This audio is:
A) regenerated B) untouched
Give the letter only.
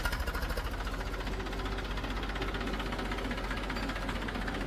B